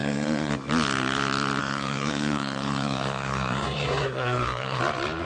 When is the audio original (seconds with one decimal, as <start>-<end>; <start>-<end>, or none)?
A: 0.5-1.6; 4.8-5.3